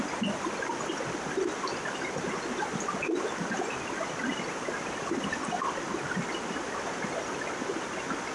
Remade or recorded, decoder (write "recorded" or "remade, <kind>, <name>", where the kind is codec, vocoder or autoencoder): recorded